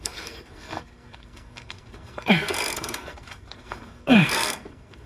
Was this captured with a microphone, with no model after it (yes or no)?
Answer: no